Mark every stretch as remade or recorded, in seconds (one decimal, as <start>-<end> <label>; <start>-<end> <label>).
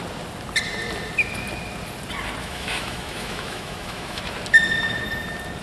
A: 0.0-2.4 recorded; 2.4-4.2 remade; 4.2-5.6 recorded